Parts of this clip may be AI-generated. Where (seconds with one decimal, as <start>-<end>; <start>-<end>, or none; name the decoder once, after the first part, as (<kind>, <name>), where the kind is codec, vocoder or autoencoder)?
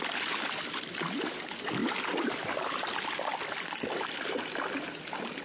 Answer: none